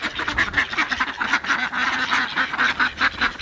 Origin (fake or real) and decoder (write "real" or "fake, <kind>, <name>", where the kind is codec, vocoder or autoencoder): real